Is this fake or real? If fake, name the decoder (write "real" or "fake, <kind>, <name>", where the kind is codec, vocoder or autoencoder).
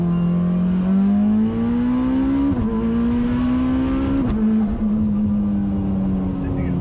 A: real